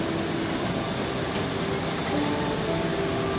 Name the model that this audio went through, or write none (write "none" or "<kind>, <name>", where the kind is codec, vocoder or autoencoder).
none